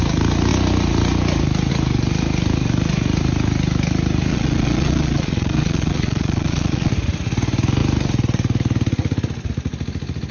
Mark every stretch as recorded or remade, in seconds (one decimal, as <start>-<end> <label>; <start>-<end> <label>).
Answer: 0.0-4.3 recorded; 4.3-6.9 remade; 6.9-10.3 recorded